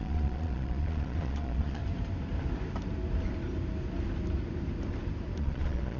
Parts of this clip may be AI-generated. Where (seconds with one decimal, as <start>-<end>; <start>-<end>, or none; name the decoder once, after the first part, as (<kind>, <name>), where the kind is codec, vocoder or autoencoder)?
0.0-1.8 (vocoder, Vocos); 5.4-6.0